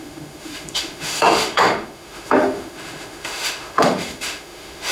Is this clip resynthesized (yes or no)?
yes